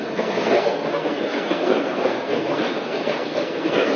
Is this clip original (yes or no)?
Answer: no